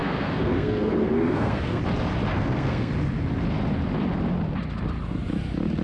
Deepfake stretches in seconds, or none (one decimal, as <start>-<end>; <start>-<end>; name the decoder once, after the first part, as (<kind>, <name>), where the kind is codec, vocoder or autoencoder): 0.0-1.8 (codec, SNAC); 2.3-2.9